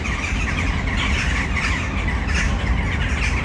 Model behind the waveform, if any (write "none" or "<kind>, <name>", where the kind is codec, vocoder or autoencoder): none